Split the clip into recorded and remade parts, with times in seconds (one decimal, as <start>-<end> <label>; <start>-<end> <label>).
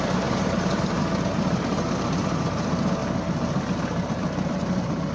0.0-1.0 remade; 1.0-1.6 recorded; 1.6-3.0 remade; 3.0-4.5 recorded; 4.5-5.1 remade